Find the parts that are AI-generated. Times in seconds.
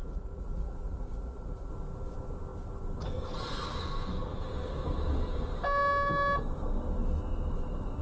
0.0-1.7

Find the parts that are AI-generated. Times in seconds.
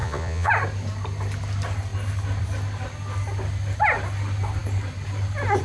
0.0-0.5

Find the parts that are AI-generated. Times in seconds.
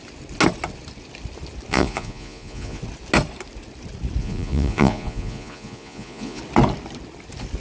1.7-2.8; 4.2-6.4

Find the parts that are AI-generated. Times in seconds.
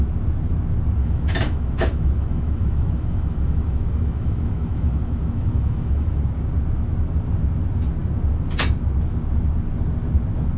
1.0-6.2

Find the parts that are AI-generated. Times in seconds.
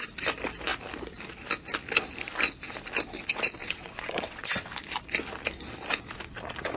3.6-4.7